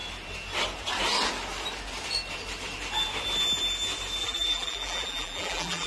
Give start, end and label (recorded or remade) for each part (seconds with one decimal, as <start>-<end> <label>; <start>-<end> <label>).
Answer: 0.0-4.2 recorded; 4.2-5.9 remade